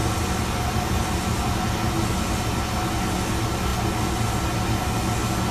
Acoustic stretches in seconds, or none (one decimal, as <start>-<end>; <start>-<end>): 0.0-5.5